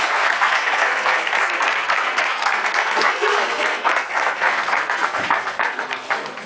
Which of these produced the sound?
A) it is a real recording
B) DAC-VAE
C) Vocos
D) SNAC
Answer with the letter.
D